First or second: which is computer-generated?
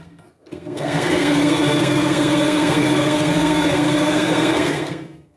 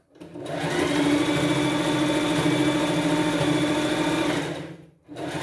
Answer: first